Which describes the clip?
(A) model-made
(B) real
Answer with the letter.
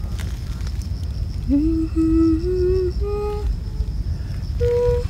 B